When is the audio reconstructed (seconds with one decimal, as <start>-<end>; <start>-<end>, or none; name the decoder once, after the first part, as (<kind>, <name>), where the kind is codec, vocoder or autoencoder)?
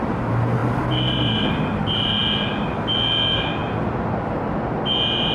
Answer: none